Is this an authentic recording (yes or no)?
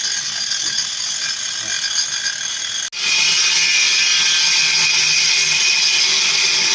yes